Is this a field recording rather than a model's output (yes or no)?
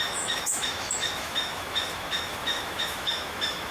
no